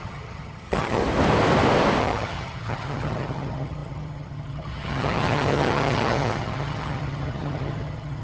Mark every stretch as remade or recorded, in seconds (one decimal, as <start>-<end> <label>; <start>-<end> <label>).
0.0-1.0 remade; 1.0-2.0 recorded; 2.0-8.2 remade